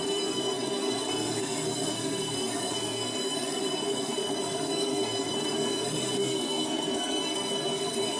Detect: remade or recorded remade